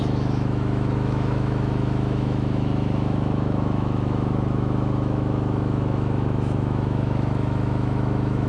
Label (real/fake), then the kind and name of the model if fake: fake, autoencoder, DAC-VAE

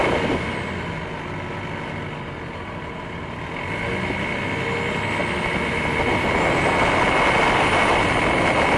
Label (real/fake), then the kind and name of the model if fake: real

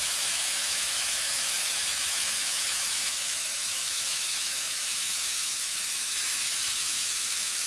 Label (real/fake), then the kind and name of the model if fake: fake, autoencoder, DAC-VAE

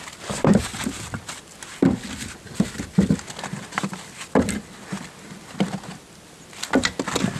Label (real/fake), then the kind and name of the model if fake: real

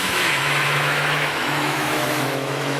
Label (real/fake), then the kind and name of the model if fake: fake, autoencoder, DAC-VAE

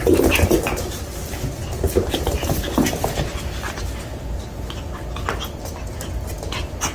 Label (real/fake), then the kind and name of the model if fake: real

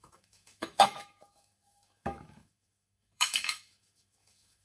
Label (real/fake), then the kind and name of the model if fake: fake, autoencoder, DAC-VAE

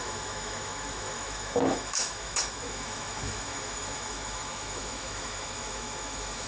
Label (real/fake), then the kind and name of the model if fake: fake, autoencoder, DAC-VAE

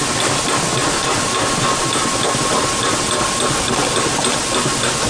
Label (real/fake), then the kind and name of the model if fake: real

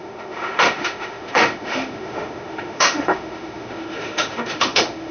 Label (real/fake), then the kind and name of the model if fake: fake, autoencoder, DAC-VAE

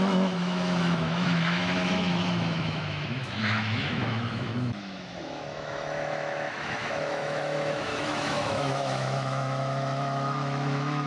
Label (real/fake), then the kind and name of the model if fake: fake, autoencoder, DAC-VAE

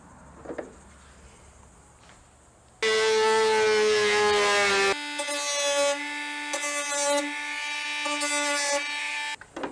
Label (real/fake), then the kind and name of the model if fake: real